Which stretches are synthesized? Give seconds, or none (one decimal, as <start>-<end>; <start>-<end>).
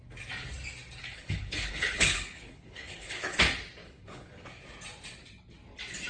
1.0-3.4; 3.8-4.6